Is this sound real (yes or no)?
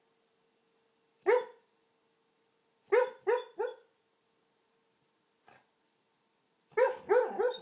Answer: yes